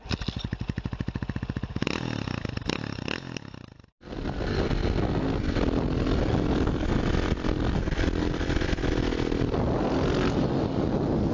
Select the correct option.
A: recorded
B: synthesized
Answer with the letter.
A